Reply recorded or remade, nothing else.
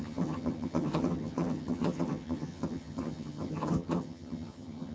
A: remade